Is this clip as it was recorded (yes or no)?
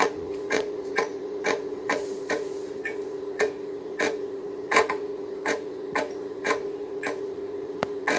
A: no